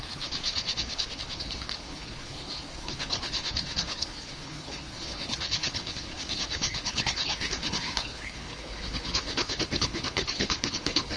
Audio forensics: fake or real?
fake